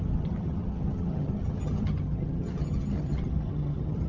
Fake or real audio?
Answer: fake